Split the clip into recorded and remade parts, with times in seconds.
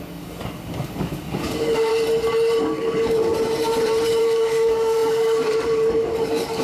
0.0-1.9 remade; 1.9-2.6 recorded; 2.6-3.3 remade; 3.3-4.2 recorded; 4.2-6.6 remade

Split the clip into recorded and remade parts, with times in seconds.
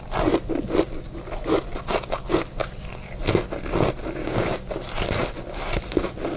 0.0-4.2 recorded; 4.2-4.7 remade; 4.7-6.4 recorded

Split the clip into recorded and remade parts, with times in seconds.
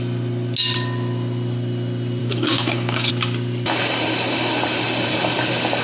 0.0-2.2 recorded; 2.2-3.1 remade; 3.1-5.8 recorded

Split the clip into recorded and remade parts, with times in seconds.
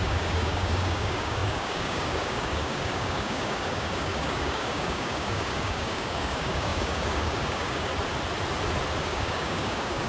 0.0-7.9 remade; 7.9-9.0 recorded; 9.0-10.1 remade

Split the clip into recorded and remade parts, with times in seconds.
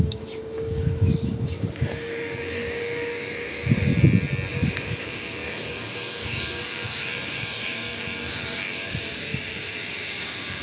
0.0-3.9 remade; 3.9-4.5 recorded; 4.5-10.6 remade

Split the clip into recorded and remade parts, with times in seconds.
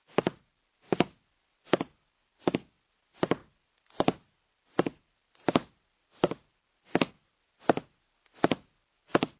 0.0-9.4 recorded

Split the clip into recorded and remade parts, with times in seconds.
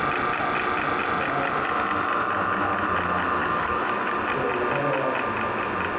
0.0-3.4 recorded; 3.4-4.2 remade; 4.2-6.0 recorded